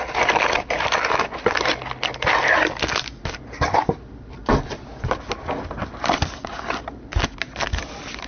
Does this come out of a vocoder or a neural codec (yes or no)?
no